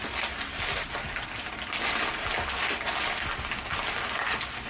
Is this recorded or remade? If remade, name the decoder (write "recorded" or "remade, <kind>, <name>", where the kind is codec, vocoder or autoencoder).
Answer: recorded